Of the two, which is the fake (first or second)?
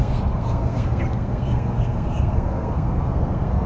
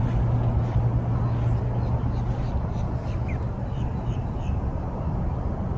first